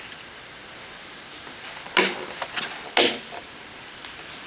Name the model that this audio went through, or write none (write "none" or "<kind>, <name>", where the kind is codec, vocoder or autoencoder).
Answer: none